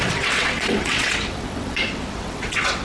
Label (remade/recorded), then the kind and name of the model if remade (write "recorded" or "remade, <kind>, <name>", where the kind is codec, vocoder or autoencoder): remade, vocoder, WaveNeXt